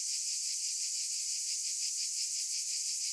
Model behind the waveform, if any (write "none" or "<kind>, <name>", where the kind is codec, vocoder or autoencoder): none